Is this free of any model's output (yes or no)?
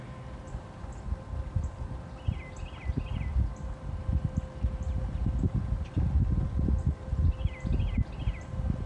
yes